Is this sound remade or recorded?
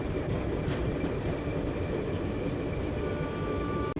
recorded